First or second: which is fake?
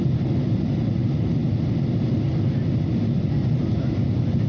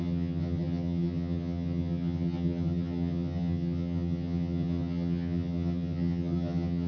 second